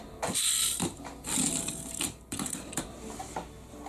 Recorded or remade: recorded